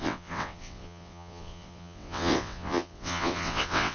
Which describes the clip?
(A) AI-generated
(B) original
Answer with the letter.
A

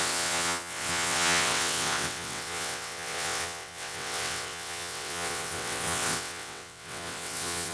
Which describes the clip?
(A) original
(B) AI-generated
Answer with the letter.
B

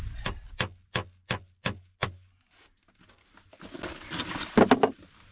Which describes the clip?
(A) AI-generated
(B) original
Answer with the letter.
B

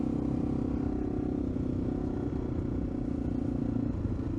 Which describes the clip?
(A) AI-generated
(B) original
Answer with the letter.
B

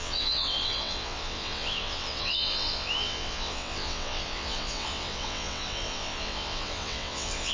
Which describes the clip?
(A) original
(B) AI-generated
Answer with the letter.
B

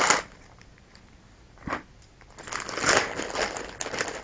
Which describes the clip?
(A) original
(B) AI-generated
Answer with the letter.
A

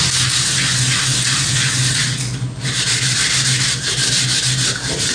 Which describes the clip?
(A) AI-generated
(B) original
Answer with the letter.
B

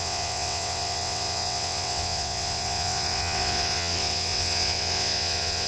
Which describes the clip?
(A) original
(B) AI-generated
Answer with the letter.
B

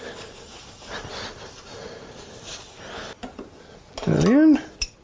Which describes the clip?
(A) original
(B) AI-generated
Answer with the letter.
A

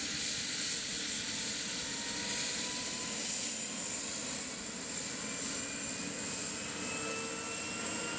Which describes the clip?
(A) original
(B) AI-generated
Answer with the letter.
A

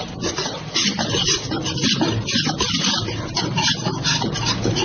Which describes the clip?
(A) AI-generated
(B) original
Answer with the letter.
B